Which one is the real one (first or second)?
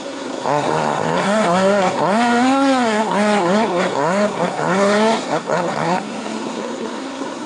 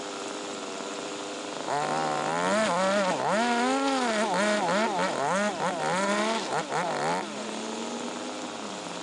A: second